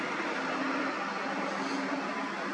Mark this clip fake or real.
real